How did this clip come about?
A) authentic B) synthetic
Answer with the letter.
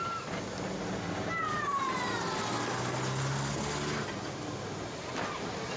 A